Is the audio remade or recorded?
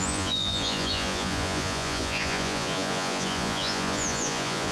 remade